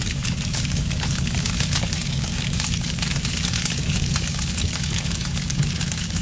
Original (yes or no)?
no